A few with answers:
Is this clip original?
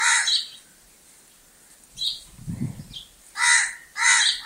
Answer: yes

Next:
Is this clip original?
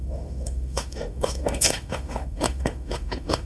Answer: no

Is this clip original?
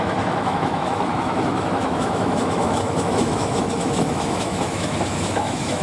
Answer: no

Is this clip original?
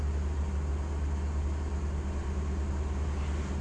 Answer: yes